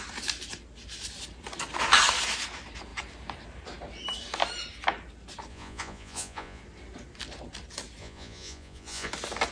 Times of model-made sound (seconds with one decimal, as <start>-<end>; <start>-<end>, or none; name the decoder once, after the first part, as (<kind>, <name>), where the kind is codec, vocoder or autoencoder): 5.5-6.6 (vocoder, Vocos); 8.0-9.1